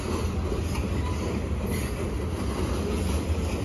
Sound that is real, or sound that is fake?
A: real